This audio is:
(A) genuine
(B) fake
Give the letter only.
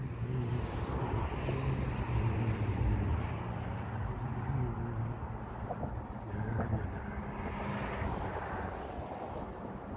A